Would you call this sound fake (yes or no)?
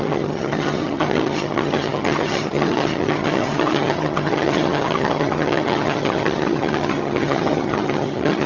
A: yes